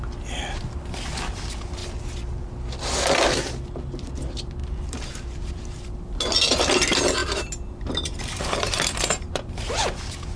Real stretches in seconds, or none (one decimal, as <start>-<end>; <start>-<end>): 0.0-4.6; 5.5-7.2; 9.7-10.4